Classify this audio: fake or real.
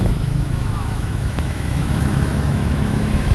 fake